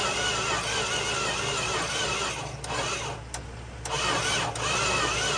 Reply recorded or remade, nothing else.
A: recorded